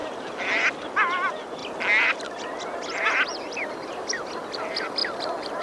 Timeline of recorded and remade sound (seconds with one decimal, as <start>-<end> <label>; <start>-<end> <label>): 0.0-1.6 remade; 1.6-2.1 recorded; 2.1-5.0 remade; 5.0-5.6 recorded